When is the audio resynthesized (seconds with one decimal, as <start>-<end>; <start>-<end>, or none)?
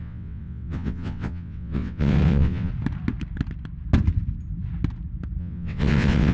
0.0-2.7; 5.4-6.3